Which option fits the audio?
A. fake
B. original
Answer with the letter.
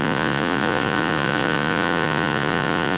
A